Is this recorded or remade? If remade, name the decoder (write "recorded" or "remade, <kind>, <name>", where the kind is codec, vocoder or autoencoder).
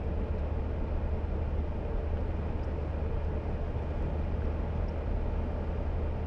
recorded